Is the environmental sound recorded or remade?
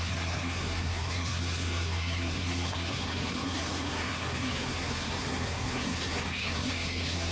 remade